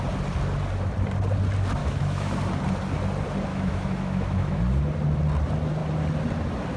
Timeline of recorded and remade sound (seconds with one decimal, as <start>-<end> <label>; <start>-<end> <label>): 0.0-1.8 recorded; 1.8-2.4 remade; 2.4-3.5 recorded; 3.5-4.6 remade; 4.6-6.8 recorded